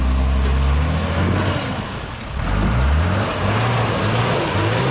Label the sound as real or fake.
real